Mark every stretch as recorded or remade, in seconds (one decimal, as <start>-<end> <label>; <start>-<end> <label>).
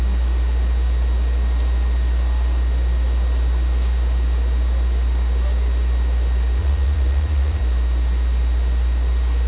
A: 0.0-6.6 recorded; 6.6-7.6 remade; 7.6-9.5 recorded